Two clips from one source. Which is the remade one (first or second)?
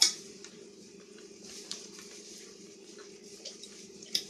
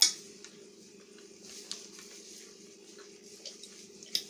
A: first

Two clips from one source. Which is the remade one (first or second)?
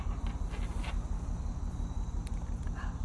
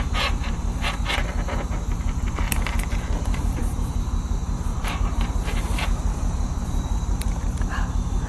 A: second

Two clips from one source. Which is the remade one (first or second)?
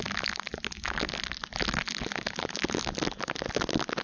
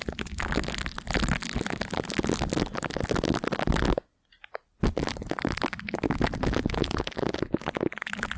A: second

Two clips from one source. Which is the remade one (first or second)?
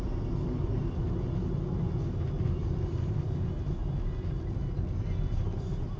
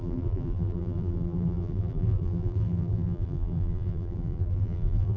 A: second